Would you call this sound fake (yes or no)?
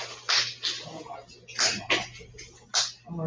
no